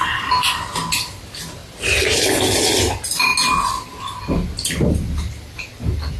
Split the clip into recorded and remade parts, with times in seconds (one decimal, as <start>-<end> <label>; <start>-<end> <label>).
0.0-6.2 recorded